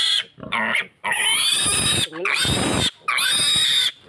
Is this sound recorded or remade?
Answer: recorded